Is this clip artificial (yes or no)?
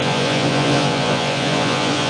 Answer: yes